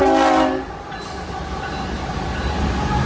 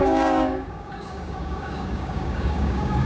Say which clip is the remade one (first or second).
second